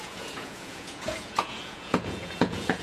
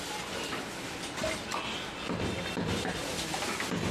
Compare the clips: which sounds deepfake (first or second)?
first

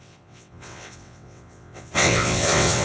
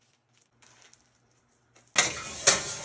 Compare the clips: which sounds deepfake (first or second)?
first